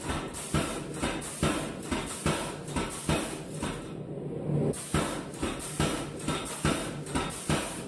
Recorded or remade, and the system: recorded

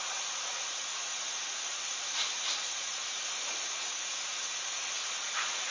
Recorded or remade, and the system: remade, vocoder, Vocos